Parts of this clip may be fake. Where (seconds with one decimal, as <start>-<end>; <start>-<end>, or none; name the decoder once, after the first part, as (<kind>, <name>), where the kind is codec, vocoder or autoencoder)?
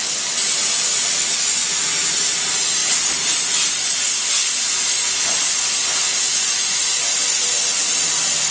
none